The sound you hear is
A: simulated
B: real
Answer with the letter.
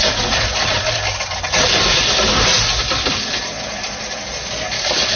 B